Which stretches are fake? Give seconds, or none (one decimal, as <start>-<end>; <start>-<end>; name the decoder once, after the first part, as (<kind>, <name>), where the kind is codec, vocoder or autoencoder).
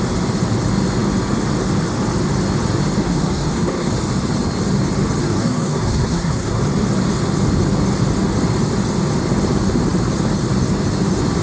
3.0-3.9 (codec, SNAC); 5.2-6.6